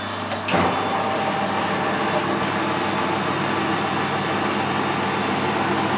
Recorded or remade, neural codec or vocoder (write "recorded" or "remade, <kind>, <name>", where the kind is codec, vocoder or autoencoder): recorded